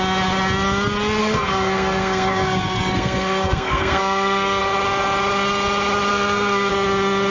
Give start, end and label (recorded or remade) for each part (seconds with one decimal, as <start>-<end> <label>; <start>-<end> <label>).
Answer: 0.0-1.2 recorded; 1.2-4.6 remade; 4.6-6.1 recorded; 6.1-6.7 remade; 6.7-7.3 recorded